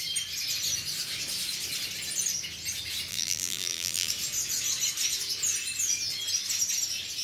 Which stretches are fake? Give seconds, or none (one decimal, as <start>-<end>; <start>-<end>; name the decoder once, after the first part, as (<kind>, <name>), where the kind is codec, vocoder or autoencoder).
3.1-4.1 (vocoder, BigVGAN v2)